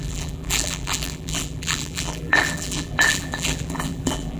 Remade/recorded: remade